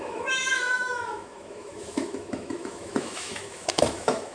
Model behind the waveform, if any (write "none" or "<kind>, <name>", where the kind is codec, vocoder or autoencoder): autoencoder, DAC-VAE